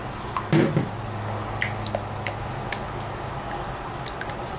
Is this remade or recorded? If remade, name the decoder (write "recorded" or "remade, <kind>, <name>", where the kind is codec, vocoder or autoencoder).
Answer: recorded